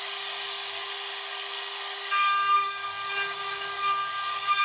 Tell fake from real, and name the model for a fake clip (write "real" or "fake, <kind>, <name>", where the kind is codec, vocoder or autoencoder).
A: fake, codec, DAC